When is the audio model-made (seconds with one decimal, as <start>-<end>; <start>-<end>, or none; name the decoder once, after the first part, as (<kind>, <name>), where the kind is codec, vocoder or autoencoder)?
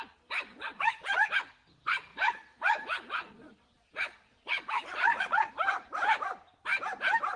0.5-1.3 (vocoder, Vocos); 2.1-5.5